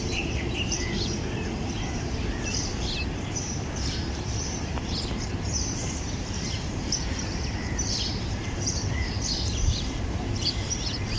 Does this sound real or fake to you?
fake